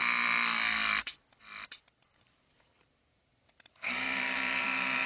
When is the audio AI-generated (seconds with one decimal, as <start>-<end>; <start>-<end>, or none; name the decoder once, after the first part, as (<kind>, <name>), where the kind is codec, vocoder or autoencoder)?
2.0-5.1 (vocoder, BigVGAN v2)